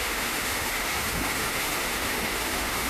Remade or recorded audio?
remade